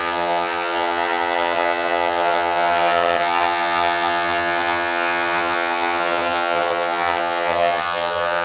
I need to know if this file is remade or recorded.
remade